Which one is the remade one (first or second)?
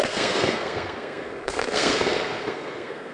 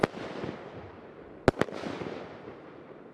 first